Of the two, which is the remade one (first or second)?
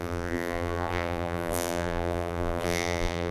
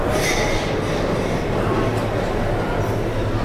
first